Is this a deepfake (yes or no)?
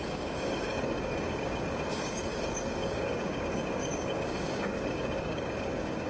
yes